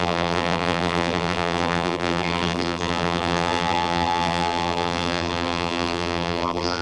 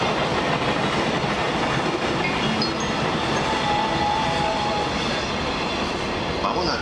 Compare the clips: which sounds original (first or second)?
second